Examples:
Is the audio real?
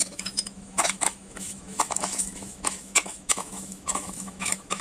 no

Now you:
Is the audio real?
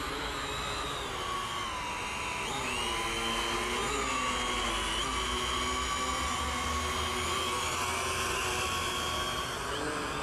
yes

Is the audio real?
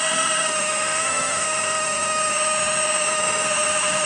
no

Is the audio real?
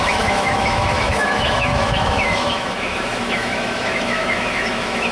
no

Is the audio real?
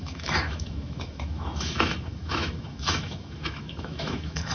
no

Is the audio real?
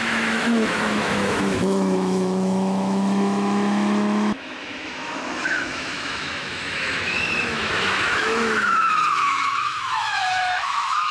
no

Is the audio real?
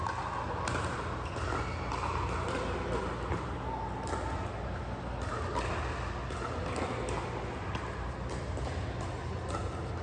yes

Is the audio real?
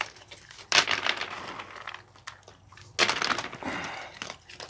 yes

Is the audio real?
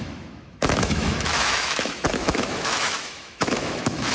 no